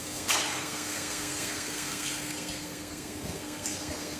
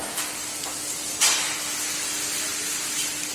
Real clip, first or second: second